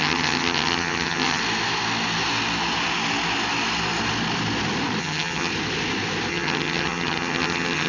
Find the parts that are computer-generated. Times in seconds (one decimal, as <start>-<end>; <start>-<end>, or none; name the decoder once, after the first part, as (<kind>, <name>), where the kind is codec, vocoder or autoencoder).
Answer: 0.0-1.4 (vocoder, HiFi-GAN); 5.0-5.5; 6.3-7.9